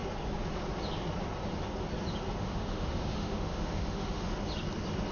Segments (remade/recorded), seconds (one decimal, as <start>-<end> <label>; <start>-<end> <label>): 0.0-2.4 recorded; 2.4-4.3 remade; 4.3-5.1 recorded